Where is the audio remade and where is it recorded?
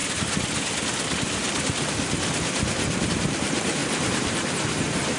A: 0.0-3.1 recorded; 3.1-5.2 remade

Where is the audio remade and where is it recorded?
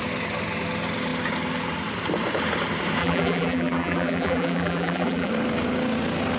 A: 0.0-3.0 recorded; 3.0-5.3 remade; 5.3-6.4 recorded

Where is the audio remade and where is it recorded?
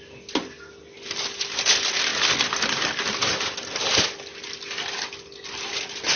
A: 0.0-6.2 recorded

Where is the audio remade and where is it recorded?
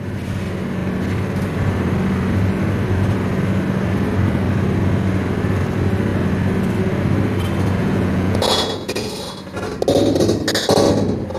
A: 0.0-7.8 recorded; 7.8-9.1 remade; 9.1-11.4 recorded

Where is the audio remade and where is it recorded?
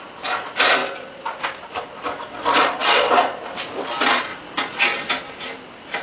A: 0.0-2.5 recorded; 2.5-3.1 remade; 3.1-6.0 recorded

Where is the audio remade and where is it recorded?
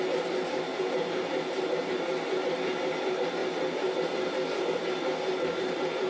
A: 0.0-6.1 recorded